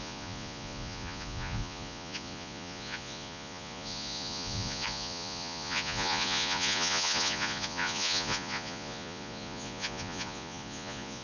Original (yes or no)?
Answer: no